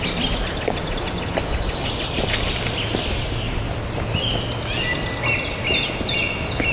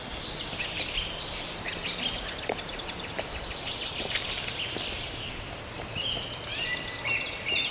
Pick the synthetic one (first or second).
second